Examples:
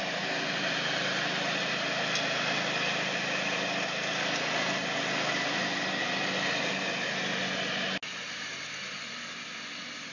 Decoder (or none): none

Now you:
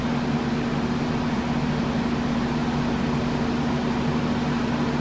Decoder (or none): none